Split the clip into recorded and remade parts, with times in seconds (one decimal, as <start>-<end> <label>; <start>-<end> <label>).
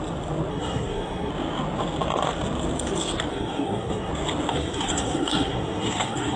0.0-0.5 recorded; 0.5-1.3 remade; 1.3-3.3 recorded; 3.3-4.1 remade; 4.1-4.5 recorded; 4.5-6.4 remade